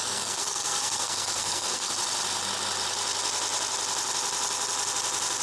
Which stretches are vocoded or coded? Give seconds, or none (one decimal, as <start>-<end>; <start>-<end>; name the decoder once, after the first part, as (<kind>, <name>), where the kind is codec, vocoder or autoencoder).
0.0-1.9 (codec, SNAC)